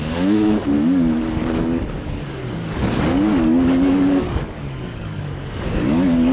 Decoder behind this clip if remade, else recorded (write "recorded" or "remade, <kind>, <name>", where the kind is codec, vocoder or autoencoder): remade, codec, DAC